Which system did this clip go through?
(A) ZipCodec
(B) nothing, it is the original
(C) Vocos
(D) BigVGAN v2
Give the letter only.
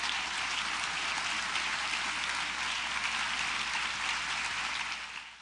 B